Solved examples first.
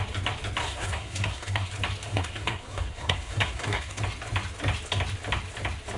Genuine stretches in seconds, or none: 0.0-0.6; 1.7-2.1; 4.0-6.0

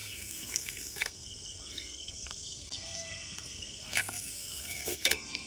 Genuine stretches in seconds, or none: none

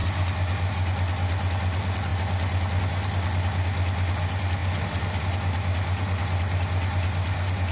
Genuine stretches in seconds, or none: 0.0-7.7